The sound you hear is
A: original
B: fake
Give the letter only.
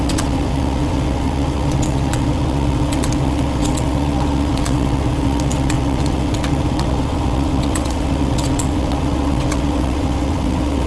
B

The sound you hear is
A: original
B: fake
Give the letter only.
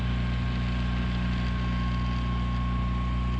A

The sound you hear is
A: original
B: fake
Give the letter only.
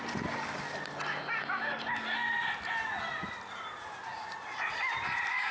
A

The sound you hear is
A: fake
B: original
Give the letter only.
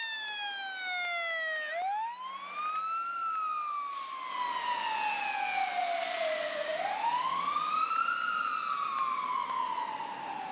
B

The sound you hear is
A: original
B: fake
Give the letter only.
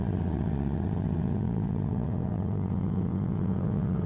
B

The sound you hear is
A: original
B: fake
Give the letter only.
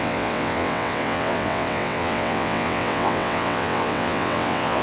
B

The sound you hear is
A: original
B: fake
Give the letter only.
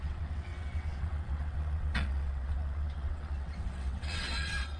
B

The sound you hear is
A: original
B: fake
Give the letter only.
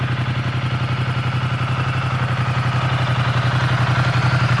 A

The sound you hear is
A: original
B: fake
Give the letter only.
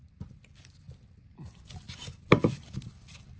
A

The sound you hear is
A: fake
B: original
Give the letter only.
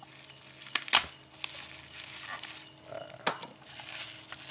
B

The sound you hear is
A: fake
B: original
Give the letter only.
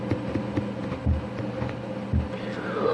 B